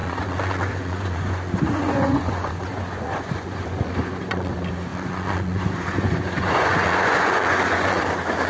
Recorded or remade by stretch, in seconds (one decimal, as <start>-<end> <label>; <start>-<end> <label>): 0.0-4.5 remade; 4.5-4.9 recorded; 4.9-8.0 remade; 8.0-8.5 recorded